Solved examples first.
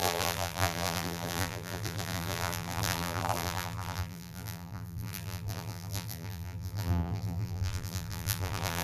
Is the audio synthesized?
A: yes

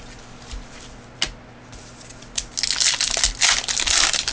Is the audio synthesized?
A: no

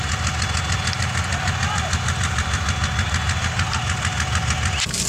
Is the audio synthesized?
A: no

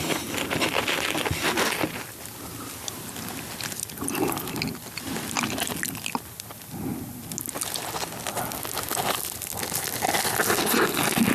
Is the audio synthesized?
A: no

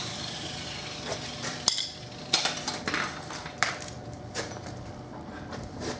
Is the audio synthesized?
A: yes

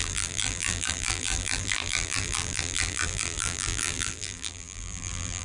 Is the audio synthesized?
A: yes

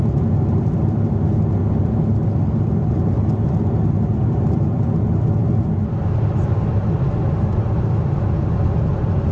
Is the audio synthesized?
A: no